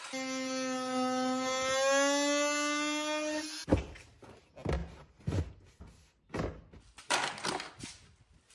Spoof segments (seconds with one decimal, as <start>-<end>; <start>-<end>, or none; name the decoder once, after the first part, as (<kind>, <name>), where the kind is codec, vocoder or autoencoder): none